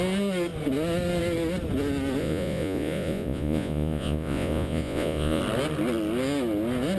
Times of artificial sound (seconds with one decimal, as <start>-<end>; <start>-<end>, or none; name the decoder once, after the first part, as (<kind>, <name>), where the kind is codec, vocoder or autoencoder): 2.2-5.4 (vocoder, Vocos)